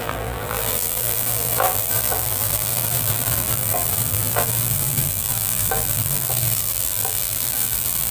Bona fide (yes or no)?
no